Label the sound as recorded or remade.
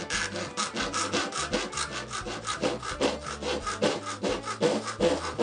recorded